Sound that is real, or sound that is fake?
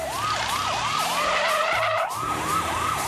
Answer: fake